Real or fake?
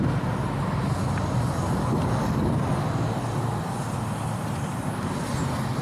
real